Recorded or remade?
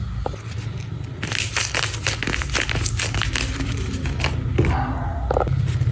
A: recorded